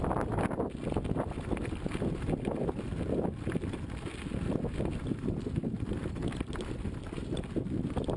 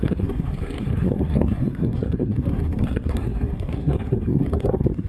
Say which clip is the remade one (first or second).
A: second